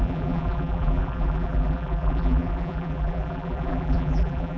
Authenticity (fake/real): fake